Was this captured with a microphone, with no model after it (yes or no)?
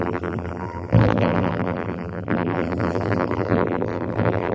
no